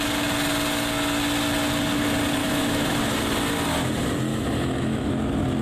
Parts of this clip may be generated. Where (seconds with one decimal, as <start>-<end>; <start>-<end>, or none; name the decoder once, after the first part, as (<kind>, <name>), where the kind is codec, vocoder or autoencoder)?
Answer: 2.4-3.0 (autoencoder, DAC-VAE); 4.3-5.1